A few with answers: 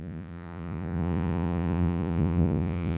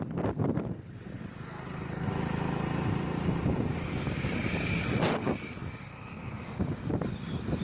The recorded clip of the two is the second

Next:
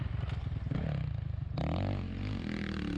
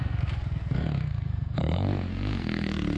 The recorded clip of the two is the first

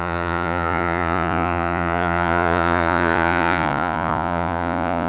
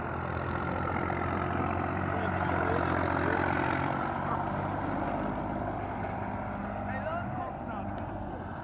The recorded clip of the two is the second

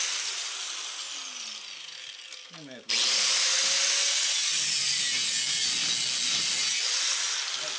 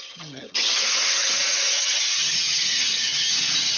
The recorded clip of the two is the first